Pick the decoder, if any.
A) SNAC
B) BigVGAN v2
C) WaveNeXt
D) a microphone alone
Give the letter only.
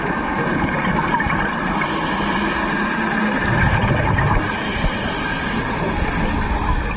D